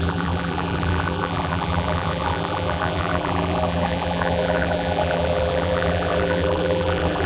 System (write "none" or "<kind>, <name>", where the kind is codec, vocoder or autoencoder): vocoder, BigVGAN v2